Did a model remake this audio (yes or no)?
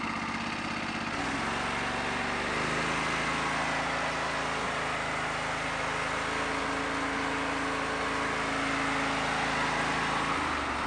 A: no